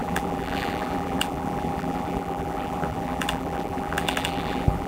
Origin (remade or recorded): remade